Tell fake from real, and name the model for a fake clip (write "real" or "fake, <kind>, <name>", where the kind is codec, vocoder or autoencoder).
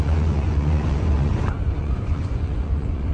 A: fake, vocoder, Vocos